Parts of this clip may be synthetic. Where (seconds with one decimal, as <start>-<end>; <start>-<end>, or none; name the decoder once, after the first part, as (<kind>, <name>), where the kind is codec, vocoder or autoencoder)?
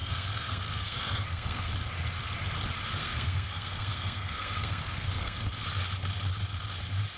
0.0-1.7 (codec, SNAC); 3.0-5.5